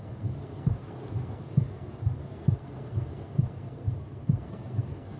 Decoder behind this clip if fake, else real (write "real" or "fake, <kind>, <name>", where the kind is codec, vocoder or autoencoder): fake, codec, SNAC